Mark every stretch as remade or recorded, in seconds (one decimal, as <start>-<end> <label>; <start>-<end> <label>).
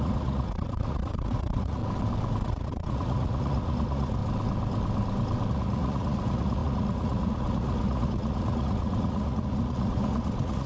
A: 0.0-1.8 remade; 1.8-2.4 recorded; 2.4-4.2 remade; 4.2-5.5 recorded; 5.5-10.7 remade